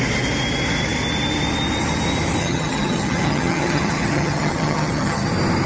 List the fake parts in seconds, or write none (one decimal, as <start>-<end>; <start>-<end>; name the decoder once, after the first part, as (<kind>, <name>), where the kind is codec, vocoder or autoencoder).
2.4-5.3 (vocoder, HiFi-GAN)

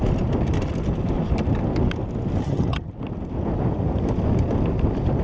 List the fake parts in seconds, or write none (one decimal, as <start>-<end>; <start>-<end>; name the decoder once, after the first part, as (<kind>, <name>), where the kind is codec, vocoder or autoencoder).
2.4-2.9 (vocoder, HiFi-GAN)

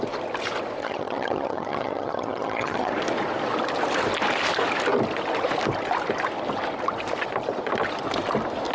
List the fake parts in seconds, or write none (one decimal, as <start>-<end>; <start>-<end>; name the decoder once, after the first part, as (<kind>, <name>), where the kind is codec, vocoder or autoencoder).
0.8-2.9 (vocoder, HiFi-GAN)

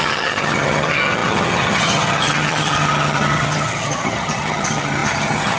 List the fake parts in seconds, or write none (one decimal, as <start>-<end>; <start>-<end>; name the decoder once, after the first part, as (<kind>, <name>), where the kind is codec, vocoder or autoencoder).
0.0-5.6 (vocoder, HiFi-GAN)

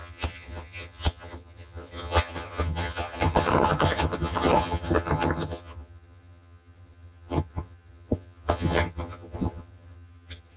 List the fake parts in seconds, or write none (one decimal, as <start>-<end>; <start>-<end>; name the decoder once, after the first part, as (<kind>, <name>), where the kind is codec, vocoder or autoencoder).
0.0-10.6 (vocoder, HiFi-GAN)

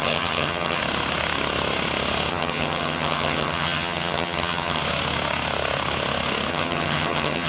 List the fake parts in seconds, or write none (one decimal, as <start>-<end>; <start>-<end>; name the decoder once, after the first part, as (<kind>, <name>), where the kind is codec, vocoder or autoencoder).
0.0-0.8 (vocoder, HiFi-GAN); 2.3-4.8; 6.5-7.5

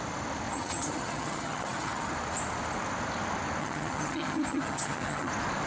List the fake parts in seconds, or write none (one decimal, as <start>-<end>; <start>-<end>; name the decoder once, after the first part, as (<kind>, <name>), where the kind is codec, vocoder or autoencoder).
0.5-2.1 (vocoder, HiFi-GAN); 3.6-5.3

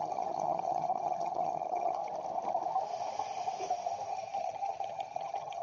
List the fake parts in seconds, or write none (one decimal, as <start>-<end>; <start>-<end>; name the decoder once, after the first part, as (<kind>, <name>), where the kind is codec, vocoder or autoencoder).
0.0-2.0 (vocoder, HiFi-GAN); 4.1-5.6